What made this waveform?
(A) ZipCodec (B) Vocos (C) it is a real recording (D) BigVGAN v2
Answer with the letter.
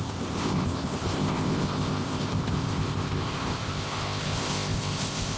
A